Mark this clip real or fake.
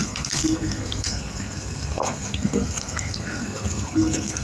fake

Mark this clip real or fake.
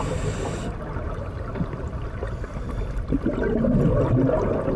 real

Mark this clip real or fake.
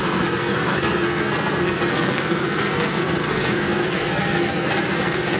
fake